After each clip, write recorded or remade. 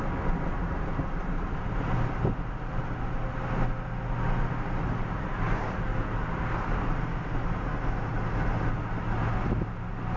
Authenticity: recorded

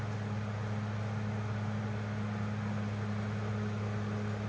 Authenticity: recorded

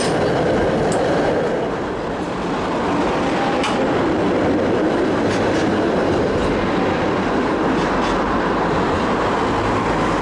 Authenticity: recorded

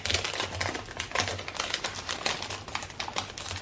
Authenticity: recorded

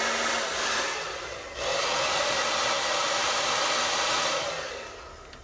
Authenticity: recorded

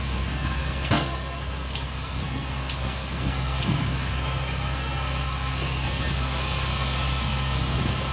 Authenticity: remade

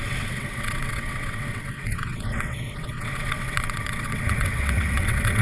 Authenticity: remade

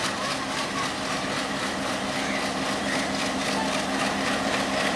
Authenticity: recorded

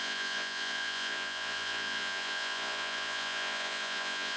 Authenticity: remade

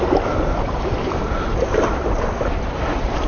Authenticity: recorded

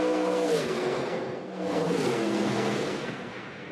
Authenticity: remade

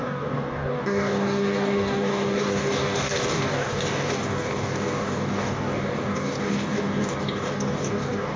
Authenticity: remade